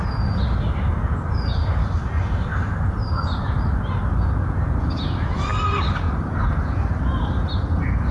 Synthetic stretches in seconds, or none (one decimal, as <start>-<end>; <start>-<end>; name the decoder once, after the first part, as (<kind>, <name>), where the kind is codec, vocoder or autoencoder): 2.5-4.1 (vocoder, BigVGAN v2)